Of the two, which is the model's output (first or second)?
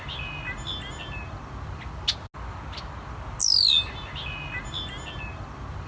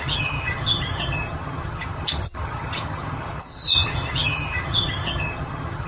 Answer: second